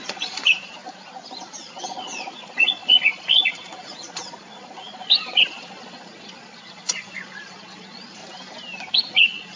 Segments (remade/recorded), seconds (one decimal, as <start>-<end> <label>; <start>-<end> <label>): 0.0-0.8 remade; 0.8-1.5 recorded; 1.5-8.2 remade; 8.2-9.1 recorded; 9.1-9.6 remade